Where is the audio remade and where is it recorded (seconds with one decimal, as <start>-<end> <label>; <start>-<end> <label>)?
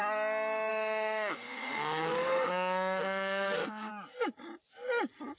0.0-0.7 recorded; 0.7-3.9 remade; 3.9-5.4 recorded